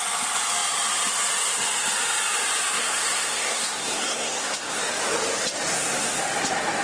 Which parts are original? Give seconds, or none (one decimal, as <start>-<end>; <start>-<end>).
0.0-2.7; 4.8-5.7; 6.2-6.8